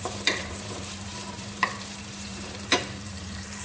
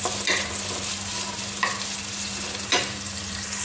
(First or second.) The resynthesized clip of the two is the first